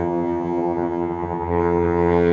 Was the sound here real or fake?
fake